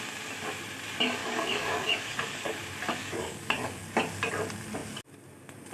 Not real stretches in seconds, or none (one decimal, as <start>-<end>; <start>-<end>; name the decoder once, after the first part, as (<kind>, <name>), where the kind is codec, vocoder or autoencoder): 1.2-2.5 (codec, DAC); 3.0-3.8